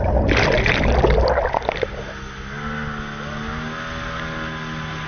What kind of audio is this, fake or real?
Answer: real